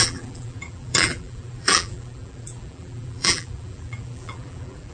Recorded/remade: remade